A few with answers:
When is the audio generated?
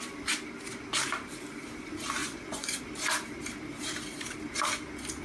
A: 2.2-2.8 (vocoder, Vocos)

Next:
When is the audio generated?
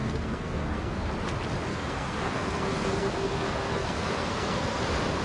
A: 0.0-1.1 (codec, SNAC); 1.7-4.8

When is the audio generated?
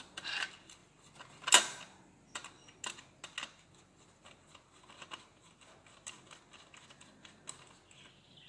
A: none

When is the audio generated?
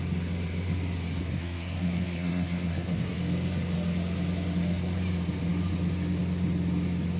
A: 1.2-3.2 (codec, SNAC)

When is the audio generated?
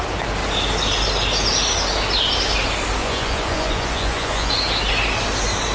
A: 3.0-4.5 (vocoder, Vocos)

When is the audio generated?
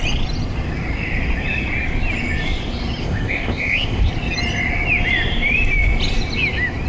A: 3.0-4.1 (codec, ZipCodec)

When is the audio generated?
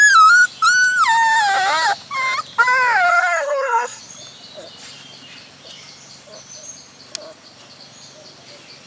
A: 3.1-4.0 (codec, SNAC)